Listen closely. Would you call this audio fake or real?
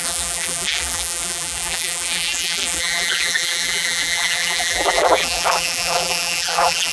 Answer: fake